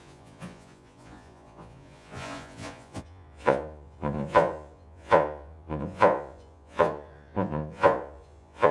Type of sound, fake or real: fake